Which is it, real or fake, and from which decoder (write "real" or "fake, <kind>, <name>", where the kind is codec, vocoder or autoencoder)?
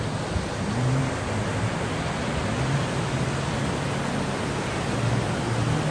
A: real